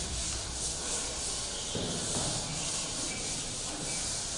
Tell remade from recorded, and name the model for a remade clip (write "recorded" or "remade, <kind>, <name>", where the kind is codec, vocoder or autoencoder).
recorded